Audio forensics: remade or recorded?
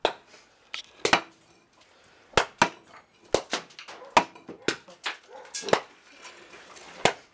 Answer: recorded